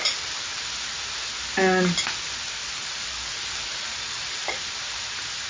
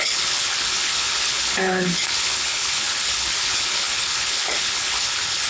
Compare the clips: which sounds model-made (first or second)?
second